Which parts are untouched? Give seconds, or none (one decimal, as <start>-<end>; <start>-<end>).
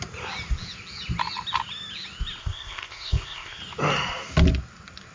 0.0-2.4; 3.6-5.1